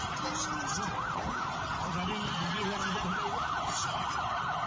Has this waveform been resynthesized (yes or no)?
no